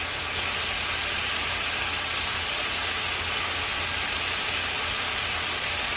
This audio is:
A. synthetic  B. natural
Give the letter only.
B